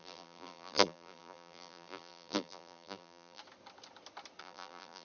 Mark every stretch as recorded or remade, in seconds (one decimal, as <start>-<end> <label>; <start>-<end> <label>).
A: 0.0-3.4 remade; 3.4-4.4 recorded; 4.4-5.0 remade